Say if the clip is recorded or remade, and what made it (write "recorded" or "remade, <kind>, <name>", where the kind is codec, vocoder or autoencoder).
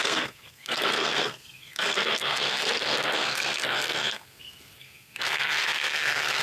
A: remade, codec, SNAC